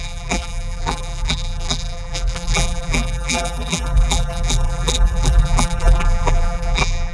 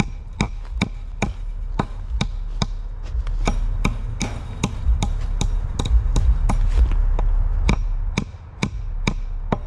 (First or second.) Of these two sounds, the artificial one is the first